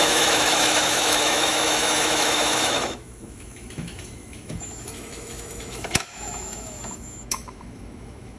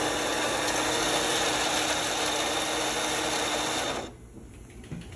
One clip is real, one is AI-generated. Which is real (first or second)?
second